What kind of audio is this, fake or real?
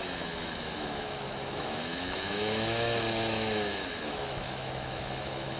fake